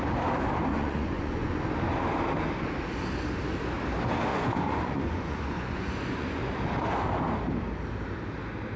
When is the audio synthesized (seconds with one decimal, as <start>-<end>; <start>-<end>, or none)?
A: 0.7-1.5; 4.3-6.4